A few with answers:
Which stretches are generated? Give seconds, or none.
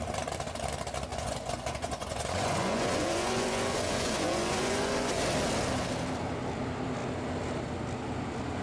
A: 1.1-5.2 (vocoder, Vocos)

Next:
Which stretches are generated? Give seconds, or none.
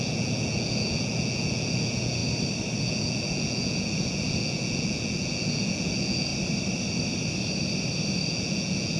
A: 0.0-2.2 (vocoder, Vocos); 2.8-6.3; 8.3-9.0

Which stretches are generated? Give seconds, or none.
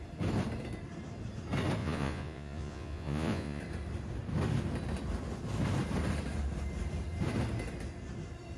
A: 1.8-3.6 (vocoder, Vocos)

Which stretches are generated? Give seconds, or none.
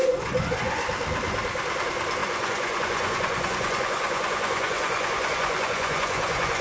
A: 0.0-0.8 (vocoder, Vocos); 2.2-6.6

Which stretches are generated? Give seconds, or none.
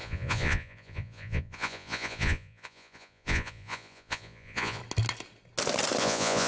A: 0.0-4.8 (vocoder, Vocos); 6.0-6.5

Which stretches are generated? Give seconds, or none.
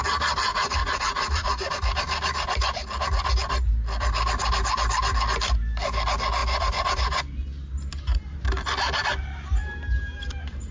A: 0.5-1.7 (vocoder, Vocos)